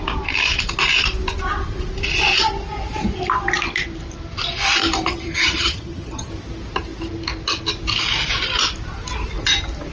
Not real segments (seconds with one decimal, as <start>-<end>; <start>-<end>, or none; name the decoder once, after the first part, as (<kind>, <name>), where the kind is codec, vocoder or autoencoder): 5.1-6.3 (vocoder, HiFi-GAN)